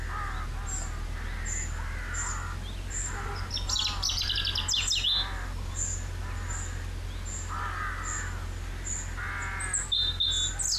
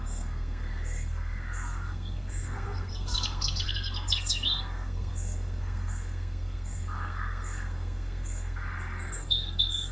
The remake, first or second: second